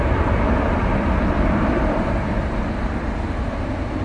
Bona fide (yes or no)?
yes